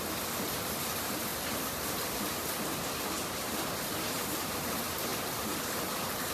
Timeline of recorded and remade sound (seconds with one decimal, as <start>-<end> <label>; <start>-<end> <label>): 0.0-1.3 recorded; 1.3-3.9 remade; 3.9-5.1 recorded; 5.1-5.8 remade; 5.8-6.3 recorded